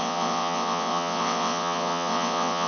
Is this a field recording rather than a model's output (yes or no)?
no